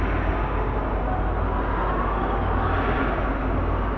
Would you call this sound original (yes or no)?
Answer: yes